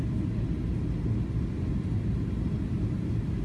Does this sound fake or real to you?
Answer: real